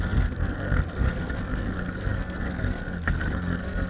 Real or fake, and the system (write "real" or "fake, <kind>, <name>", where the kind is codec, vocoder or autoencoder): fake, codec, SNAC